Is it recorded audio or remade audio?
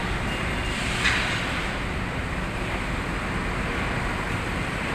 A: recorded